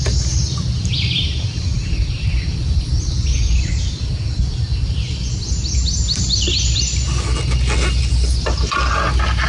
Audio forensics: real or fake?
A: real